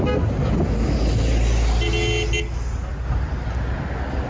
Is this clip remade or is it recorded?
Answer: recorded